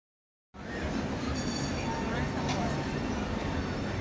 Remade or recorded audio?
recorded